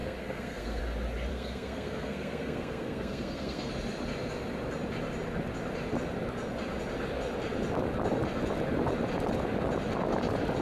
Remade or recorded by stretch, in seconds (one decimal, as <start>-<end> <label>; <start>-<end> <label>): 0.0-0.8 remade; 0.8-1.3 recorded; 1.3-3.7 remade; 3.7-10.6 recorded